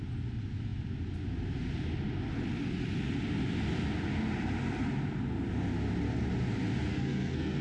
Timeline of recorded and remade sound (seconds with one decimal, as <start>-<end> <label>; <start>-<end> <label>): 0.0-6.9 recorded; 6.9-7.6 remade